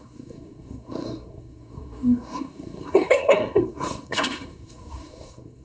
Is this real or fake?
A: fake